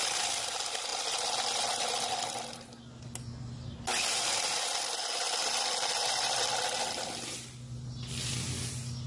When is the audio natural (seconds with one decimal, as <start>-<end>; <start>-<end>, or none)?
0.0-9.1